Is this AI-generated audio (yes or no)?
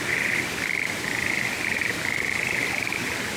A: no